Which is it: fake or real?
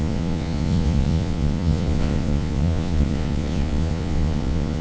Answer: fake